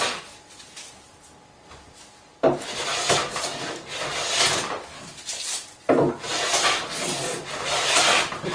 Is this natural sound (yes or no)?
yes